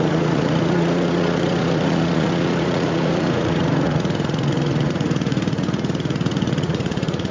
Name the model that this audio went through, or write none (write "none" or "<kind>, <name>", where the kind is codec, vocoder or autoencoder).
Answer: vocoder, Vocos